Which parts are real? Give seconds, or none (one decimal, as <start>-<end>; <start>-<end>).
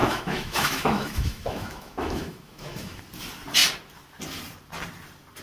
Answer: 3.0-5.4